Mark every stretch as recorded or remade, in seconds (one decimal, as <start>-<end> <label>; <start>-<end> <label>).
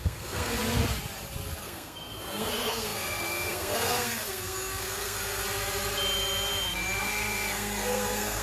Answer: 0.0-0.6 remade; 0.6-1.6 recorded; 1.6-5.4 remade; 5.4-7.0 recorded; 7.0-8.4 remade